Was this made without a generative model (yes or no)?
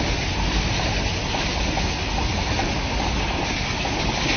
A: yes